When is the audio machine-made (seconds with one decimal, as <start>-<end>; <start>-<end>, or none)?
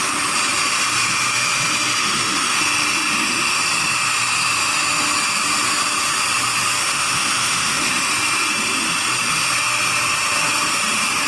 2.0-2.6; 3.1-3.6; 6.8-8.1